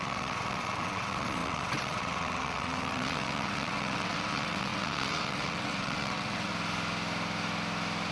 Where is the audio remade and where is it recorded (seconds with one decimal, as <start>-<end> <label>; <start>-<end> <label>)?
0.0-6.5 remade; 6.5-8.1 recorded